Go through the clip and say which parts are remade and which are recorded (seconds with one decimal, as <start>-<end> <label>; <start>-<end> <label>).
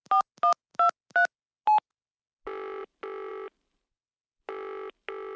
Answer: 0.0-5.4 recorded